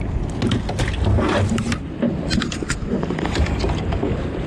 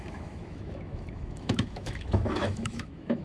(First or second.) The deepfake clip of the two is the second